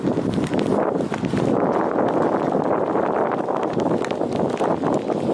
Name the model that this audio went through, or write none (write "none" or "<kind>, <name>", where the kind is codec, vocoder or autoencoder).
none